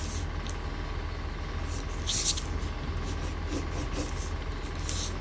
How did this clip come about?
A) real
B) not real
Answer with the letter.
A